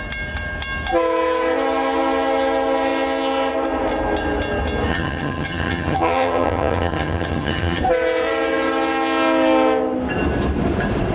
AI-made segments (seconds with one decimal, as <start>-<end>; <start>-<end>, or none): 4.9-7.8